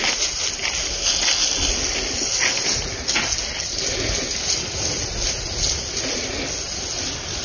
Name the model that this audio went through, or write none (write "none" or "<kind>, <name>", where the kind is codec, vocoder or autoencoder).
none